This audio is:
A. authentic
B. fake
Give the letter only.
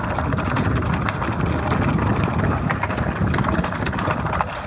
A